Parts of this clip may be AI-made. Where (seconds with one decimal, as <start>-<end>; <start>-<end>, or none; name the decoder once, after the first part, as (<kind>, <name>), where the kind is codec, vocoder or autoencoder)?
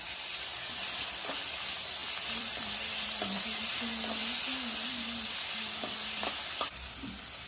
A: 2.0-3.6 (vocoder, BigVGAN v2)